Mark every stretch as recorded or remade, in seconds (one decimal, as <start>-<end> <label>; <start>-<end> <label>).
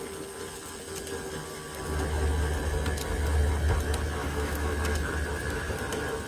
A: 0.0-4.2 recorded; 4.2-4.7 remade; 4.7-6.3 recorded